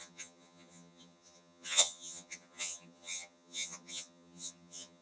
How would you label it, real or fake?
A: fake